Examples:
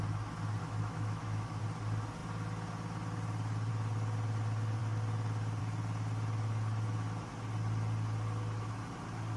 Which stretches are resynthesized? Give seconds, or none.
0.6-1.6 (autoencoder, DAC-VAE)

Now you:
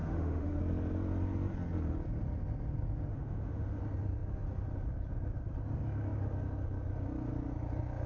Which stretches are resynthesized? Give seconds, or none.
0.0-0.6 (autoencoder, DAC-VAE); 3.1-3.8

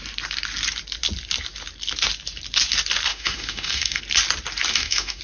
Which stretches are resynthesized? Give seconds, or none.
3.1-4.0 (autoencoder, DAC-VAE); 4.7-5.2

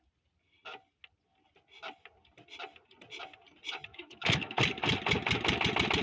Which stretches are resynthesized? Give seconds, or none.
3.9-4.6 (autoencoder, DAC-VAE)

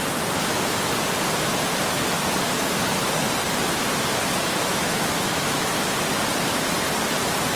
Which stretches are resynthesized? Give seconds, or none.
4.7-5.7 (autoencoder, DAC-VAE)